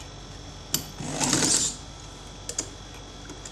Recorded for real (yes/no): yes